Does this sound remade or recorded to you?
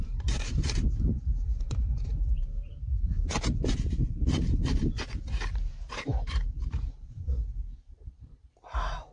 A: remade